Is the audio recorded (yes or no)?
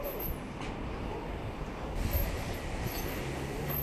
yes